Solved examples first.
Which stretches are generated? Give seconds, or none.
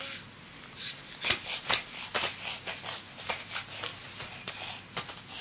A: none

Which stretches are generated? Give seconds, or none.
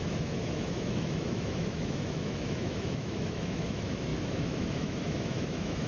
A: 0.0-5.9 (autoencoder, DAC-VAE)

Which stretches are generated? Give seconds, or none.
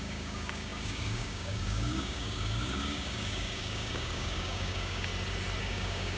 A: 0.0-5.1 (codec, DAC); 5.6-6.2